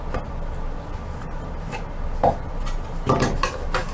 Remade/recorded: recorded